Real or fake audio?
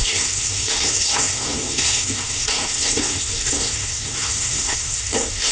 fake